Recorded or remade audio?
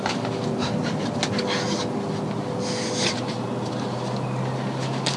recorded